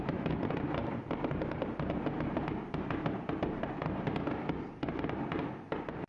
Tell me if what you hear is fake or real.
fake